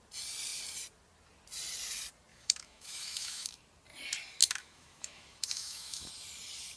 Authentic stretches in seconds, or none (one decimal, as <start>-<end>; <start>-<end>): 0.0-2.3; 3.6-4.4; 6.1-6.8